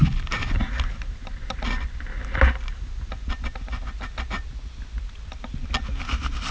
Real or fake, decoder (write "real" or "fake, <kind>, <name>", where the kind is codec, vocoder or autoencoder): real